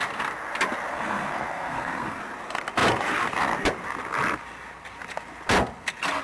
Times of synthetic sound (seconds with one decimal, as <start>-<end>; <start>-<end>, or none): 0.9-2.2